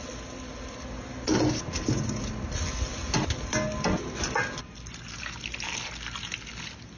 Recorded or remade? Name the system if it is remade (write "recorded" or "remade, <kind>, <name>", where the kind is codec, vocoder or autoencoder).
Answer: recorded